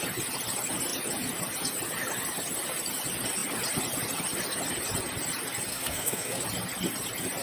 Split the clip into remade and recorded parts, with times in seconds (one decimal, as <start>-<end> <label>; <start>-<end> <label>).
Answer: 0.0-5.7 recorded; 5.7-6.4 remade; 6.4-7.4 recorded